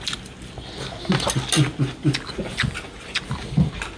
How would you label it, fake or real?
real